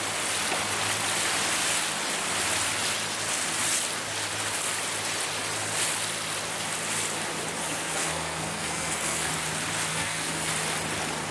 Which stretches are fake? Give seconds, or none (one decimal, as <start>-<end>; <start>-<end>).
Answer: 7.6-9.3; 9.9-10.5